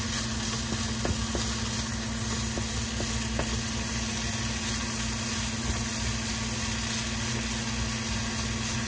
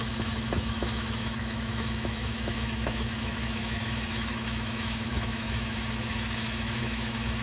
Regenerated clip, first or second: second